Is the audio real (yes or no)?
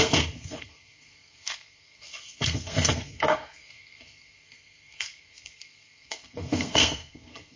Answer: no